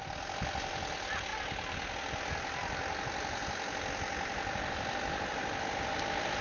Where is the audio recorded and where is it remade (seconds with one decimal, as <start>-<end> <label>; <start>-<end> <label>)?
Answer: 0.0-6.4 recorded